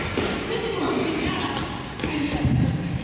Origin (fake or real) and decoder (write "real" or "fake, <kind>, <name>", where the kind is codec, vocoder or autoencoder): real